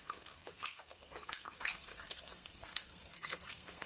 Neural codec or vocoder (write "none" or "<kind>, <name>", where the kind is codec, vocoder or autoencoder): codec, SNAC